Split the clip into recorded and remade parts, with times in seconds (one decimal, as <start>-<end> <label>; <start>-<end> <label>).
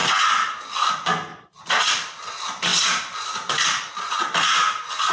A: 0.0-1.3 recorded; 1.3-1.9 remade; 1.9-5.1 recorded